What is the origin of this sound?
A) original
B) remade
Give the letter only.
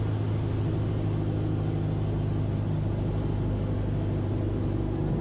A